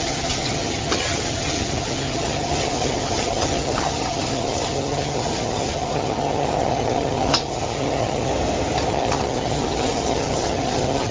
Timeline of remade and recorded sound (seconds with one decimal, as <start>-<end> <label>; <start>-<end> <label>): 0.0-8.3 remade; 8.3-8.9 recorded; 8.9-11.1 remade